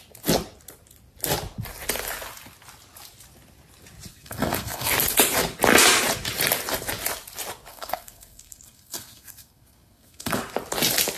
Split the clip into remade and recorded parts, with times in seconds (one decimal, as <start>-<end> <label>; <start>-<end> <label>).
0.0-4.1 recorded; 4.1-4.9 remade; 4.9-7.7 recorded; 7.7-10.4 remade; 10.4-11.2 recorded